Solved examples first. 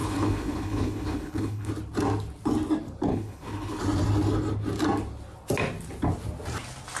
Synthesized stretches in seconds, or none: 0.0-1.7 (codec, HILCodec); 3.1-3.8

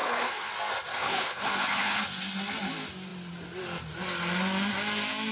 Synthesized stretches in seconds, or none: 0.0-0.5 (codec, HILCodec); 0.9-2.0

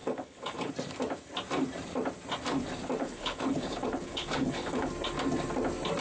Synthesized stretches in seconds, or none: 0.0-0.7 (codec, HILCodec); 3.0-4.9

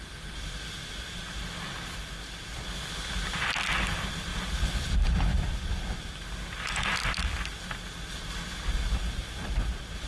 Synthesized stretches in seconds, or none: none

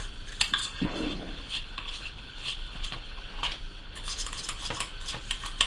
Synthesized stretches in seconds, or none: 0.6-3.2 (codec, HILCodec); 3.8-4.4

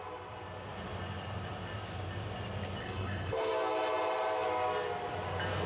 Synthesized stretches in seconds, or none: 2.8-3.5 (codec, HILCodec)

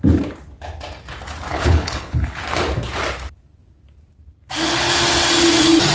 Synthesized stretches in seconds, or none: 1.5-2.4 (codec, HILCodec)